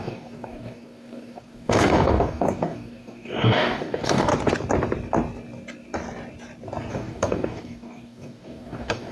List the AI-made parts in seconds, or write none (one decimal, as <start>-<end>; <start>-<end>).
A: 0.0-4.3; 6.9-9.1